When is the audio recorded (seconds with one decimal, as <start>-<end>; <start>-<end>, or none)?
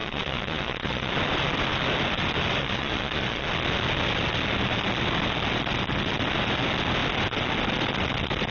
1.1-2.6; 3.5-8.5